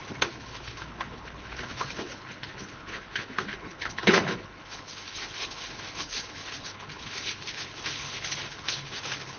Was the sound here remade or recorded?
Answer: remade